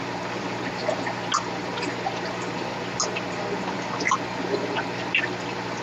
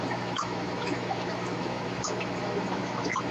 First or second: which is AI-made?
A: second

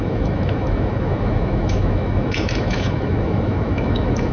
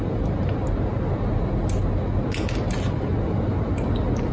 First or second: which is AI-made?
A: first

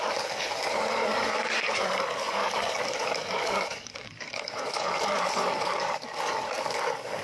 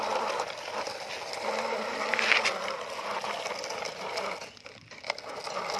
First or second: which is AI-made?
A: first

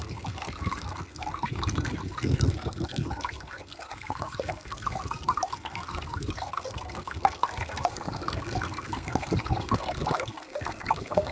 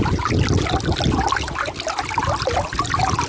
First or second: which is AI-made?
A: first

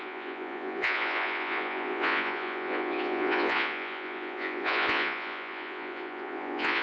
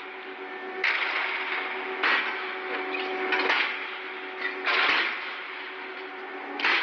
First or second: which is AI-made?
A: first